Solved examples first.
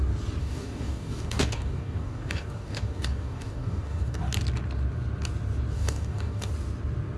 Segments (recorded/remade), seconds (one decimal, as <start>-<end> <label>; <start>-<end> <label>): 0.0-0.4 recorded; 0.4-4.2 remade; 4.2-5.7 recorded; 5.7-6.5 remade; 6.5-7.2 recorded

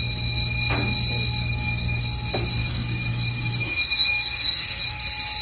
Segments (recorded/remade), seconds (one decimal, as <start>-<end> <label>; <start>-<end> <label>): 0.0-1.4 recorded; 1.4-2.0 remade; 2.0-2.6 recorded; 2.6-5.0 remade; 5.0-5.4 recorded

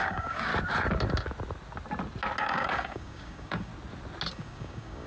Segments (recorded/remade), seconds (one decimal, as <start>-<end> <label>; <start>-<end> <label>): 0.0-0.5 remade; 0.5-2.4 recorded; 2.4-3.7 remade; 3.7-4.3 recorded; 4.3-5.1 remade

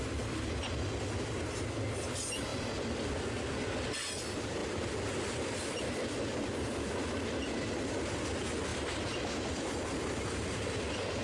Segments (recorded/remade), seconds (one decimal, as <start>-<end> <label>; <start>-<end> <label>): 0.0-11.2 recorded

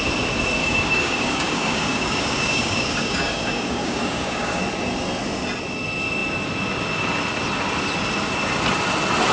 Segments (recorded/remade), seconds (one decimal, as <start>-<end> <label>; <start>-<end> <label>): 0.0-0.6 recorded; 0.6-4.6 remade; 4.6-9.3 recorded

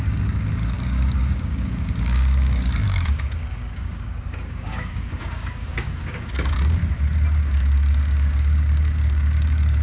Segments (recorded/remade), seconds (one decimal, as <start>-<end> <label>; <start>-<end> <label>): 0.0-6.8 remade; 6.8-7.4 recorded; 7.4-9.8 remade